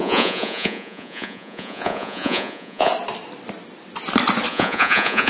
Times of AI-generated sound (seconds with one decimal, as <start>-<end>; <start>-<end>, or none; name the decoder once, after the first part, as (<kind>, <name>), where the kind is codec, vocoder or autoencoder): 0.0-2.9 (vocoder, Vocos); 4.5-5.3